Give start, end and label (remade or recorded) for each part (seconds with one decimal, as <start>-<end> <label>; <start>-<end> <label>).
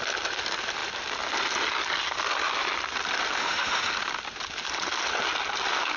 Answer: 0.0-3.4 recorded; 3.4-3.9 remade; 3.9-6.0 recorded